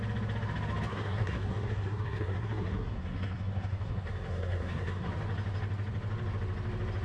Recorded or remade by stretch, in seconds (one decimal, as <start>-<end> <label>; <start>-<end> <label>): 0.0-0.9 recorded; 0.9-5.1 remade; 5.1-7.0 recorded